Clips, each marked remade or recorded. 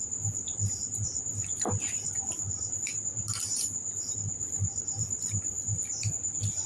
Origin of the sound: remade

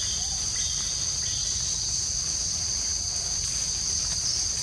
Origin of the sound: recorded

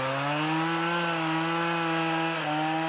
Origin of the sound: recorded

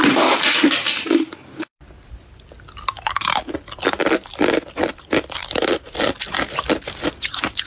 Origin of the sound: remade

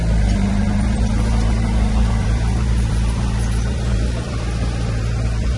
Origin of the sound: remade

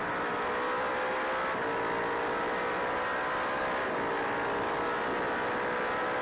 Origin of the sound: recorded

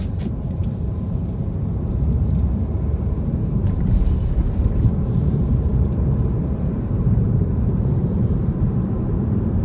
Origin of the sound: remade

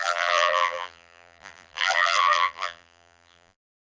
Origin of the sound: remade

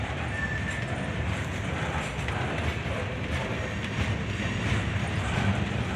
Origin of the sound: remade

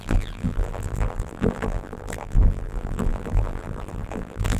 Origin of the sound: remade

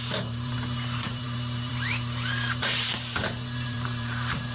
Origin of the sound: remade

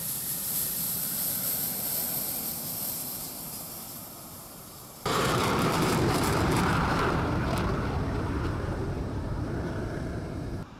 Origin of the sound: remade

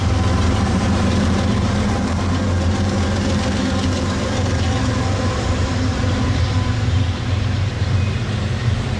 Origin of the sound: remade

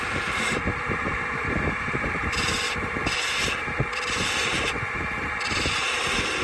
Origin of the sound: remade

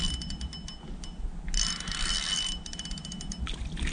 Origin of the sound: recorded